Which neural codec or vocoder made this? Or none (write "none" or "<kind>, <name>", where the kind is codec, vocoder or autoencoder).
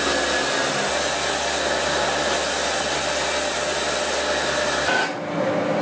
none